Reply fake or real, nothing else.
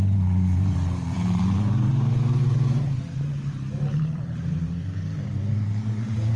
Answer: fake